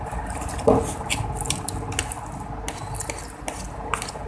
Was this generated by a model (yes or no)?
no